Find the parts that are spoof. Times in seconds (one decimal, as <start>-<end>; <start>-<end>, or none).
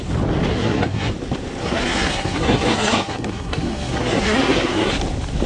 0.5-1.1; 1.6-4.9